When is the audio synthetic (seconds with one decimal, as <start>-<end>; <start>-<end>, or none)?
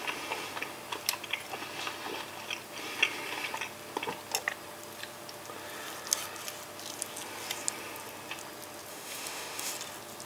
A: 8.9-9.7